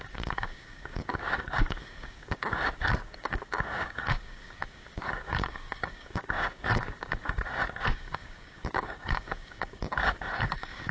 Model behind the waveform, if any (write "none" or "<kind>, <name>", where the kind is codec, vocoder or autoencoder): codec, DAC